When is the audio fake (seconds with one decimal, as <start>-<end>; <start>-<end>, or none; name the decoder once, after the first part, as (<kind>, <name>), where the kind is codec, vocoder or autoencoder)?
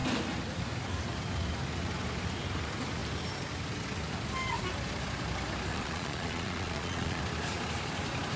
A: 5.7-7.2 (vocoder, Vocos)